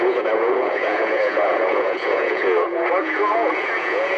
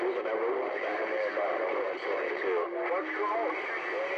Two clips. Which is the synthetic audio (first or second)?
first